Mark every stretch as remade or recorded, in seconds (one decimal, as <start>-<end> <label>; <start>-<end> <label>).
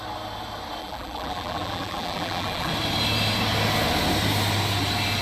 0.0-0.8 recorded; 0.8-2.7 remade; 2.7-5.2 recorded